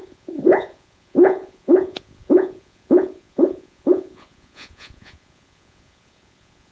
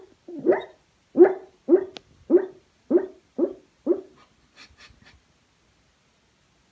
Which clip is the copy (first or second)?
first